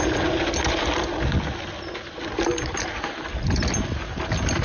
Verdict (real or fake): real